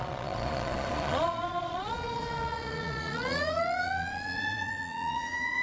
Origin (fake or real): fake